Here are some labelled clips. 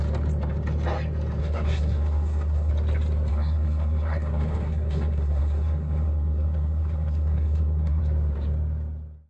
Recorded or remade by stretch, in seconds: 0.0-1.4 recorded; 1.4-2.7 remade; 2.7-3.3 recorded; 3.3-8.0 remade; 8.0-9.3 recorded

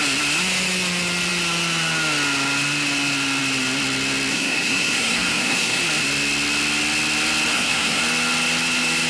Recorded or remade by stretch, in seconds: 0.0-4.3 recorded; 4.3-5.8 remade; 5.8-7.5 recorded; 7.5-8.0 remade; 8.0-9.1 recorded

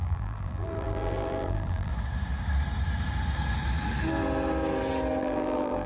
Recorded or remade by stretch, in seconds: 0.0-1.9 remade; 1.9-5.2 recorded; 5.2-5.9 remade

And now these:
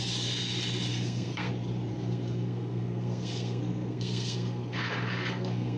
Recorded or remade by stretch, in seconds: 0.0-0.9 recorded; 0.9-1.5 remade; 1.5-1.9 recorded; 1.9-5.8 remade

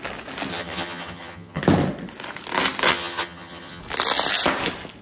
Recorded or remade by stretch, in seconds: 0.0-0.5 recorded; 0.5-1.6 remade; 1.6-2.9 recorded; 2.9-3.8 remade; 3.8-5.0 recorded

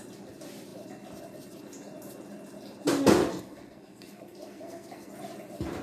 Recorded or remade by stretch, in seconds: 0.0-3.3 recorded; 3.3-5.1 remade; 5.1-5.8 recorded

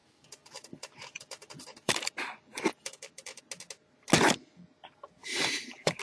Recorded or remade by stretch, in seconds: 0.0-3.4 remade; 3.4-5.2 recorded; 5.2-6.0 remade